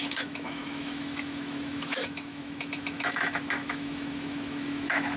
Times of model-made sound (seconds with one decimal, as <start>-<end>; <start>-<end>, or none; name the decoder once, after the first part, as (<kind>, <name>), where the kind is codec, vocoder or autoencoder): 0.0-5.2 (autoencoder, DAC-VAE)